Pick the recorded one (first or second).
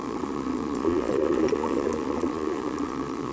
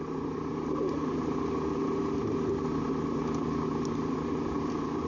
second